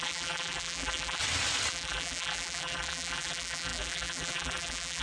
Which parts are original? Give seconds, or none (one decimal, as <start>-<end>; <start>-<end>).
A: 1.2-1.7